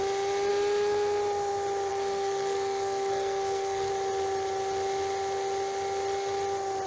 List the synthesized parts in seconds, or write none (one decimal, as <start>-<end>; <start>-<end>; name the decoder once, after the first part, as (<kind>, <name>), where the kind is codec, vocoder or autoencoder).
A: 1.9-3.9 (codec, SNAC)